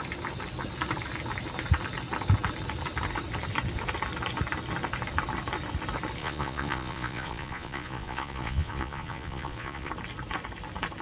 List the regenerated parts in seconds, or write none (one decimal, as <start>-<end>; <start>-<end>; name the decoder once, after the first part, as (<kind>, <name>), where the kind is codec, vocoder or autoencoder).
6.2-9.9 (vocoder, Vocos)